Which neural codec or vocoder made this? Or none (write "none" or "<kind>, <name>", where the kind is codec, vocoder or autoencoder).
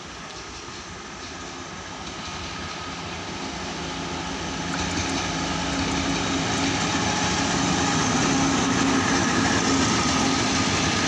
none